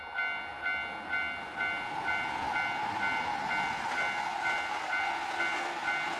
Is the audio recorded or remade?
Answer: recorded